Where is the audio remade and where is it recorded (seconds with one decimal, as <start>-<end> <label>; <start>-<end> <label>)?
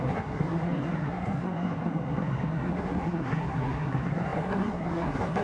0.0-5.4 remade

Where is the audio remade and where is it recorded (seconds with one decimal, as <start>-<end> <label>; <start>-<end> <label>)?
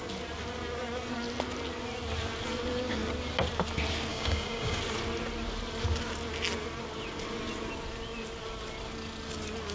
0.0-4.1 recorded; 4.1-4.8 remade; 4.8-9.7 recorded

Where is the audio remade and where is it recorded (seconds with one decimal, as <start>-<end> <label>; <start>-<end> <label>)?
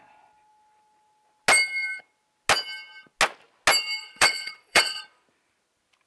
0.0-4.0 recorded; 4.0-5.0 remade; 5.0-6.1 recorded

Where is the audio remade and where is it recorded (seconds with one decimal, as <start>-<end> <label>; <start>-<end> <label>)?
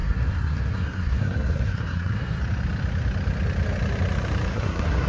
0.0-2.4 remade; 2.4-4.5 recorded; 4.5-5.1 remade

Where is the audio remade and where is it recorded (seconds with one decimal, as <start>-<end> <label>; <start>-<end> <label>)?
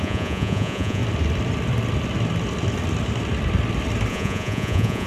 0.0-1.0 remade; 1.0-4.1 recorded; 4.1-5.1 remade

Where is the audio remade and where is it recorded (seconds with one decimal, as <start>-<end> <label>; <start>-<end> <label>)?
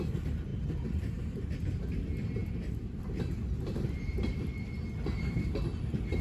0.0-2.4 recorded; 2.4-5.8 remade; 5.8-6.2 recorded